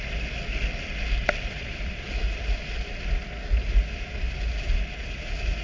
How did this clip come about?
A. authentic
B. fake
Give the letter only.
A